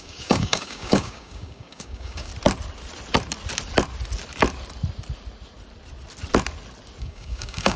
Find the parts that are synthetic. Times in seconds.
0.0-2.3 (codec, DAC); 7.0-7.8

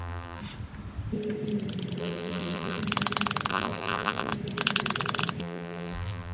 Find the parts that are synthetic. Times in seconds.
0.0-0.4 (vocoder, BigVGAN v2); 2.0-2.8; 3.5-4.3; 5.4-6.3